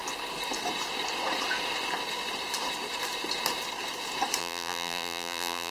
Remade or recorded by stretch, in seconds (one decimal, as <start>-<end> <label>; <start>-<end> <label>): 0.0-4.4 recorded; 4.4-5.7 remade